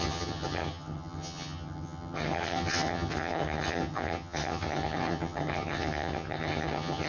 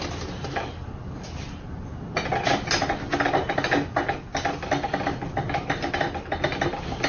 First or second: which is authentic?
second